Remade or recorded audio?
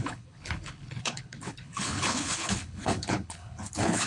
remade